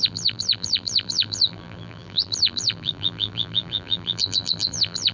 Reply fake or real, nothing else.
fake